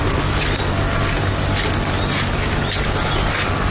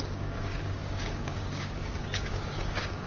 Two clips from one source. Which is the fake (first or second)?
second